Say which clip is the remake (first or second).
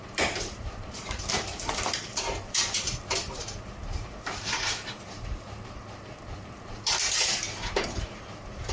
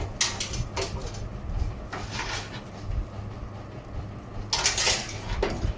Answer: first